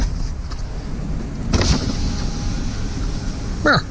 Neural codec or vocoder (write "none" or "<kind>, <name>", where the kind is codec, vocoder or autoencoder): none